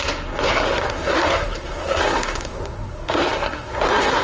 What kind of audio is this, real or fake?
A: fake